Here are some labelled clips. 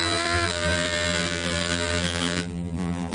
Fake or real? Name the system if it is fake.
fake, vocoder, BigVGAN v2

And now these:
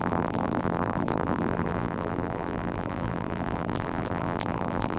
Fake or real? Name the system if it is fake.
fake, vocoder, BigVGAN v2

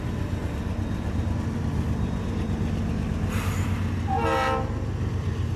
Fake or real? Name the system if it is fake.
real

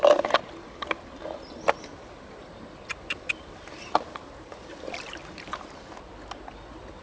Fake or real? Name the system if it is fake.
real